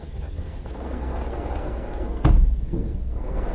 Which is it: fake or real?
fake